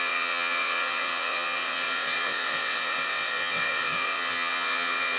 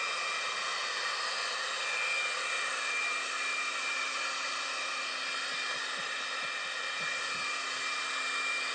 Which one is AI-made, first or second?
first